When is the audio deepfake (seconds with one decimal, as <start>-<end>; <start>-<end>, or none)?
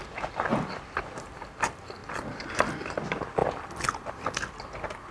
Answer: 0.5-1.4; 2.0-2.7